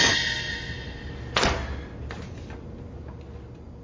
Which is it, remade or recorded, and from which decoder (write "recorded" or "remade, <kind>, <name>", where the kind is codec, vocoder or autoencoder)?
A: recorded